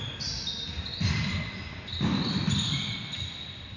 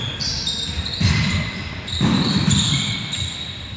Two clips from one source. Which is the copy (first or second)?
second